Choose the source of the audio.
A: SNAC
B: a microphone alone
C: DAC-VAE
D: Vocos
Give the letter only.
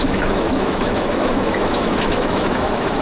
C